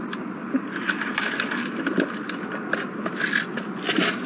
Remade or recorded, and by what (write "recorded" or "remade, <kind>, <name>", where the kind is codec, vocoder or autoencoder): recorded